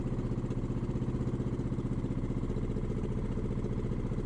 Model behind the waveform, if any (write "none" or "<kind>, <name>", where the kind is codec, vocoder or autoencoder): none